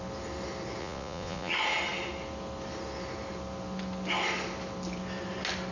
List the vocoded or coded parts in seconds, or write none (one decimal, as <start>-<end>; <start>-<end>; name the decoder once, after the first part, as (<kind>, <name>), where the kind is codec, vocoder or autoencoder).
0.8-1.5 (vocoder, Vocos)